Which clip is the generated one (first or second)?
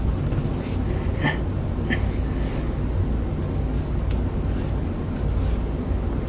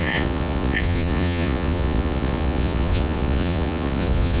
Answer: second